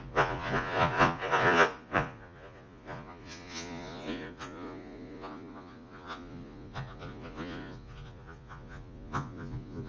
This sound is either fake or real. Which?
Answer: fake